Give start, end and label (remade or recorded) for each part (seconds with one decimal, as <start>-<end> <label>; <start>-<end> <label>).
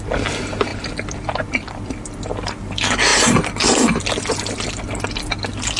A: 0.0-0.7 recorded; 0.7-2.5 remade; 2.5-5.8 recorded